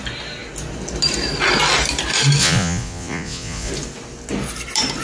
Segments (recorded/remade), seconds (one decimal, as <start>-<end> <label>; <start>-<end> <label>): 0.0-2.4 recorded; 2.4-3.7 remade; 3.7-5.0 recorded